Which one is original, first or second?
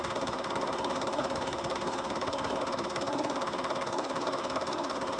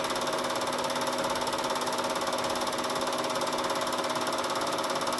second